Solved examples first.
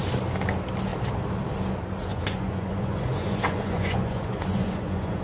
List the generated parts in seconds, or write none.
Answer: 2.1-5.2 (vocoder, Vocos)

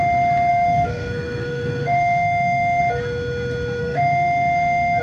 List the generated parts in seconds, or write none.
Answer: 0.5-2.8 (codec, SNAC); 3.8-5.0

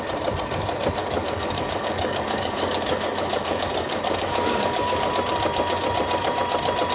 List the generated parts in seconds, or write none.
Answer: 1.0-5.1 (codec, DAC)

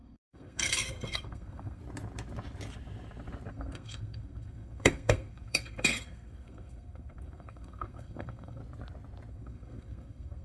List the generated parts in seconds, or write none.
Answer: 0.0-1.8 (codec, SNAC); 3.5-8.6; 9.3-10.4

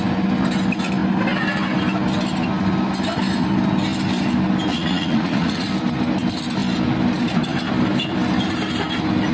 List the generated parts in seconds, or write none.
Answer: 4.7-5.7 (vocoder, Vocos)

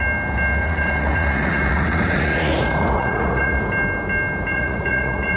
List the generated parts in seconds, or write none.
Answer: 0.6-3.6 (vocoder, Vocos); 4.5-5.4

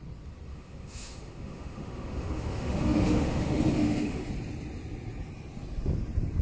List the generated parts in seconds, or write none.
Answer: 0.5-4.3 (autoencoder, DAC-VAE)

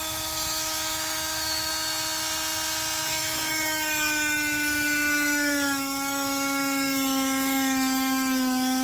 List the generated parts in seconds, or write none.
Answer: 0.0-1.7 (autoencoder, DAC-VAE); 3.0-8.8